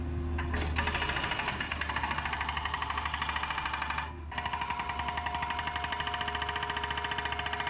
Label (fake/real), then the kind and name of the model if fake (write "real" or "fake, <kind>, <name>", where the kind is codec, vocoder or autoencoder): real